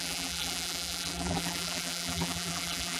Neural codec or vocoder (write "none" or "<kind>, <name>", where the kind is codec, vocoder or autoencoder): vocoder, BigVGAN v2